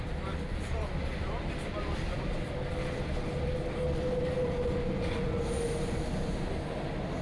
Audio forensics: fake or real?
real